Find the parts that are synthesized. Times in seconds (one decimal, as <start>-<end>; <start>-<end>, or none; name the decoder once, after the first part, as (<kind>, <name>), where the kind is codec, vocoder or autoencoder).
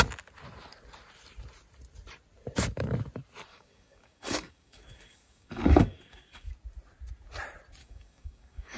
3.5-6.5 (codec, DAC); 7.8-8.8